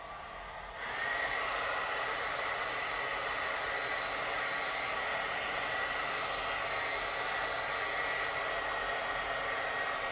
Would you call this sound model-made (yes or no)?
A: no